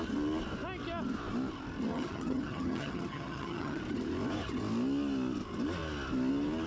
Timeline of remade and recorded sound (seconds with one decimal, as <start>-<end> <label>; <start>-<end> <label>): 0.0-1.9 recorded; 1.9-3.8 remade; 3.8-6.7 recorded